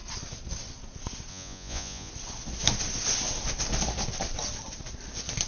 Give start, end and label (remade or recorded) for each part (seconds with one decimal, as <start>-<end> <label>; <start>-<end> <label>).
0.0-1.3 recorded; 1.3-2.1 remade; 2.1-5.5 recorded